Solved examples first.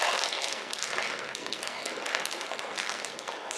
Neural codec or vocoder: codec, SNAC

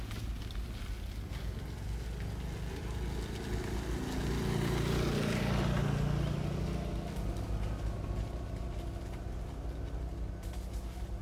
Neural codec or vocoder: none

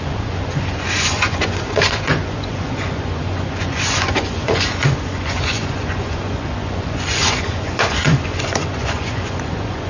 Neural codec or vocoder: vocoder, Vocos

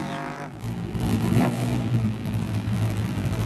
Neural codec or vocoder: vocoder, BigVGAN v2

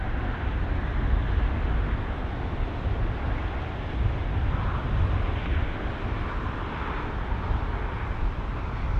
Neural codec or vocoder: none